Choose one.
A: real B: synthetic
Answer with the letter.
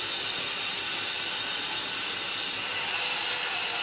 A